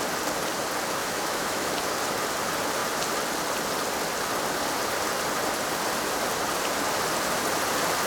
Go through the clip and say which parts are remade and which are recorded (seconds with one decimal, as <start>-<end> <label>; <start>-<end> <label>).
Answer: 0.0-1.0 recorded; 1.0-1.7 remade; 1.7-8.1 recorded